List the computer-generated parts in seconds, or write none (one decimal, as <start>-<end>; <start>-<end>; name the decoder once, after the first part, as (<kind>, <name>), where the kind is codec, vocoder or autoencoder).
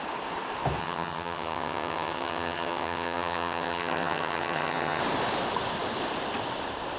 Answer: 0.8-5.0 (vocoder, HiFi-GAN)